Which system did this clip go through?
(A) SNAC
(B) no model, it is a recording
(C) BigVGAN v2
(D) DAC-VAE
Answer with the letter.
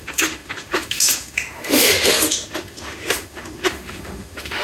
D